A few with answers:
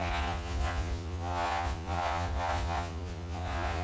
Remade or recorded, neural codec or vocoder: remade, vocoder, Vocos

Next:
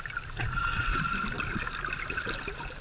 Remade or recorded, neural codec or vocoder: recorded